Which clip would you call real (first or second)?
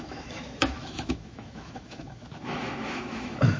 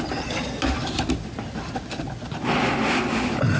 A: second